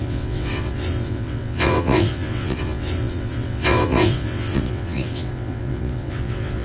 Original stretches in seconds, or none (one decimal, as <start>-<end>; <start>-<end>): none

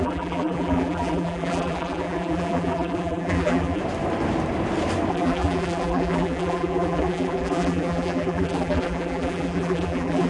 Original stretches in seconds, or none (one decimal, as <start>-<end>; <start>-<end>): 3.8-5.1